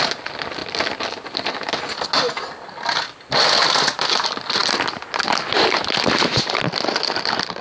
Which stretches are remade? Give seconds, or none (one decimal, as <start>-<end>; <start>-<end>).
none

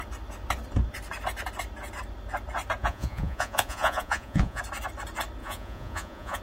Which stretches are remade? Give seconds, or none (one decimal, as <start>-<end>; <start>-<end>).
2.8-4.6; 5.4-6.4

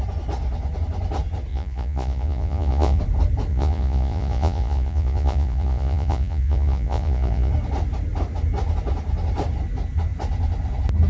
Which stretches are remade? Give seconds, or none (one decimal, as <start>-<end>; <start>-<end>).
1.5-3.0; 3.5-7.5

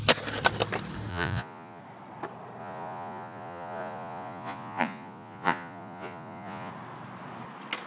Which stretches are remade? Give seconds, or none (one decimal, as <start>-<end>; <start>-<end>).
1.1-1.8; 2.6-6.7